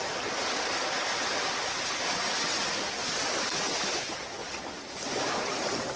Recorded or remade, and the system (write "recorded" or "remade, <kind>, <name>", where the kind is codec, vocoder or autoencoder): recorded